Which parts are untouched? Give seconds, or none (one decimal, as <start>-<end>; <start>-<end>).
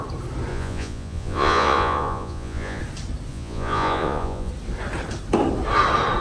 0.0-0.5; 2.8-3.3; 4.5-6.2